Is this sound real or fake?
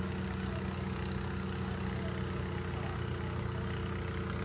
real